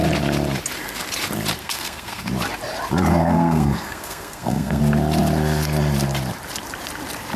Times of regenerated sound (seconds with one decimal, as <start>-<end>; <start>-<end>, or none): 1.6-2.3; 3.1-4.8